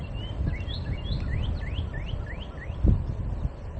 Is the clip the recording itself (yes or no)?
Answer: yes